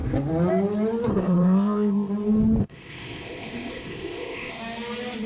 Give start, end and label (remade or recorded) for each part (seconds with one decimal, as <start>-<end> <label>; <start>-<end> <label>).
0.0-1.1 recorded; 1.1-2.1 remade; 2.1-2.6 recorded; 2.6-4.6 remade; 4.6-5.3 recorded